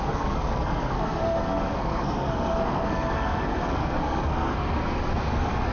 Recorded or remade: remade